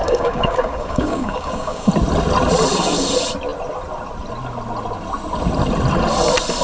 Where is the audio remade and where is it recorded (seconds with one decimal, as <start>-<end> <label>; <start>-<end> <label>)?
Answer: 0.0-1.9 remade; 1.9-6.6 recorded